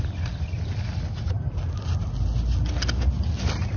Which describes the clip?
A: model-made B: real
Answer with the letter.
B